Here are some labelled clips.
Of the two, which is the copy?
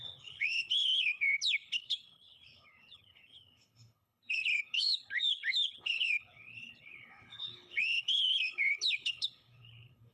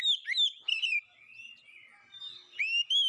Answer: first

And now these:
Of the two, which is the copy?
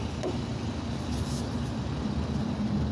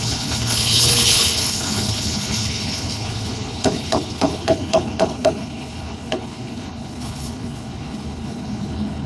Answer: second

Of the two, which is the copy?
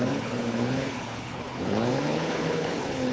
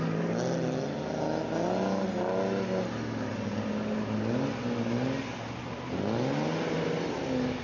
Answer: first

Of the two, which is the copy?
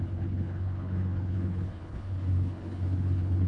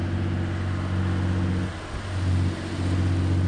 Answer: first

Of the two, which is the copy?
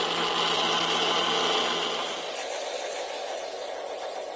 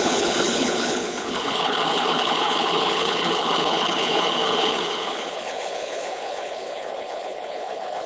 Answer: second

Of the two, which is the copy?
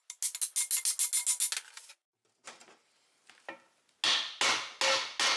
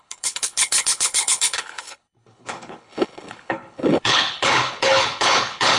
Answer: second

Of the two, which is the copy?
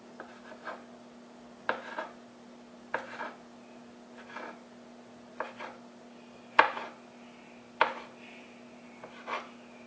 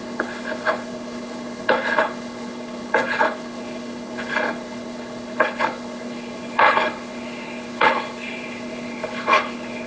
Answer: second